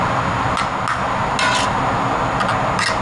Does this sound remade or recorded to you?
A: recorded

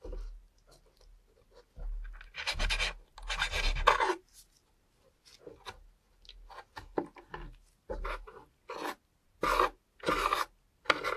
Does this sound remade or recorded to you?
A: recorded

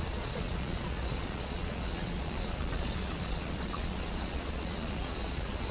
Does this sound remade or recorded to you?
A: remade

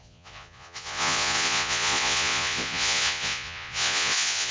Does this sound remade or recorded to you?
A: remade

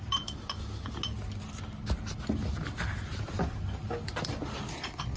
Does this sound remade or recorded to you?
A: recorded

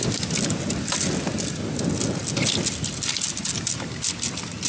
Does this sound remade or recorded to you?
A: recorded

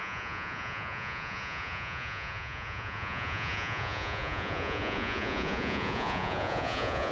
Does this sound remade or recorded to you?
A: remade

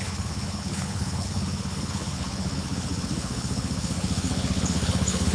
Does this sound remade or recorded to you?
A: remade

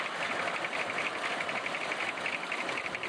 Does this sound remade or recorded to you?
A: remade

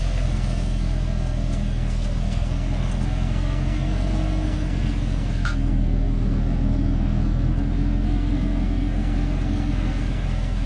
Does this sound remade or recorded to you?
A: remade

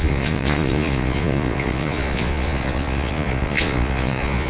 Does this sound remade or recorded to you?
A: remade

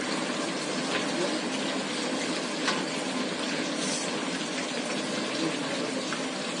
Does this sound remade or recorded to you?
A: recorded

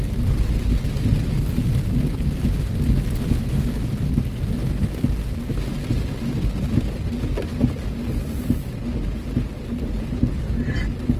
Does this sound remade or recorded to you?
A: recorded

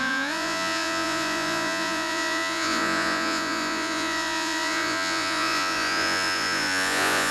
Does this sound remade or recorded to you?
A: remade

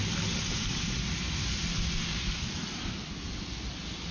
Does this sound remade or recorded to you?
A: recorded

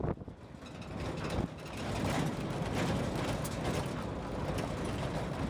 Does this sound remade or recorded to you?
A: recorded